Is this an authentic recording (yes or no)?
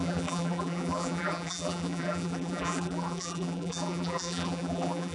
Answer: no